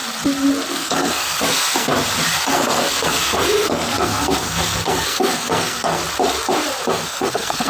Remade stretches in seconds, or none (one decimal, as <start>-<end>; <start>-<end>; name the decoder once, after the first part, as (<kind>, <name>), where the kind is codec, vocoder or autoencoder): 0.7-1.9 (codec, SNAC); 2.5-6.0; 6.9-7.7